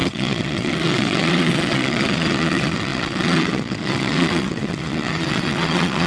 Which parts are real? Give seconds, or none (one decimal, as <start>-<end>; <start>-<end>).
none